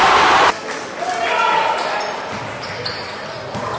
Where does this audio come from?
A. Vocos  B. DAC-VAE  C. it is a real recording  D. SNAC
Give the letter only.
C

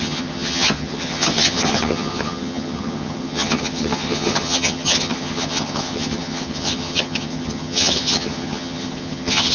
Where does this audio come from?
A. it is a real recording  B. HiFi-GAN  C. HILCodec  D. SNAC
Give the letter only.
B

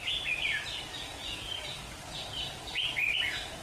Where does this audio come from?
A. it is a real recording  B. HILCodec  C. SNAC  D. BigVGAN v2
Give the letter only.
D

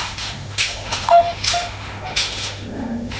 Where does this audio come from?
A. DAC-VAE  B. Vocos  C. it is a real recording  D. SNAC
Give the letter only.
A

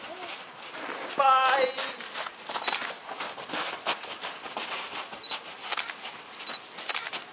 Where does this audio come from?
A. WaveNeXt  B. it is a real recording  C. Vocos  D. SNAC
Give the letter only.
B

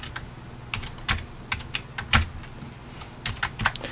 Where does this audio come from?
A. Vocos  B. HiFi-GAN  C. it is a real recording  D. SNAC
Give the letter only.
C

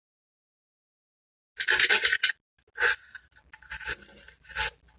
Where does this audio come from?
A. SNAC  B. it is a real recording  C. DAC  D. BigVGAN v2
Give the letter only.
B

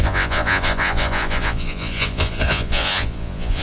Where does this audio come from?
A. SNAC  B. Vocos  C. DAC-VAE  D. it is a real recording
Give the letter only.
B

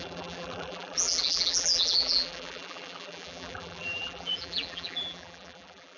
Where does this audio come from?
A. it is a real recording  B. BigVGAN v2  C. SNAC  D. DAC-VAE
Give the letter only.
B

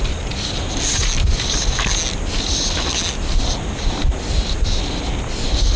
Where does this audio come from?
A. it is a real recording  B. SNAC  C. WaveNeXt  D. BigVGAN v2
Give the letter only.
A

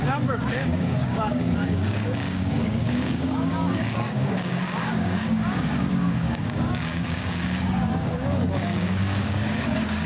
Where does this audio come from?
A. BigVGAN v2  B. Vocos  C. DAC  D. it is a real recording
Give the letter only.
C